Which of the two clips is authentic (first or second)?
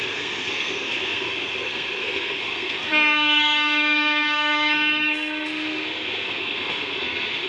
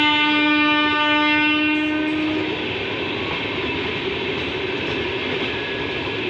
second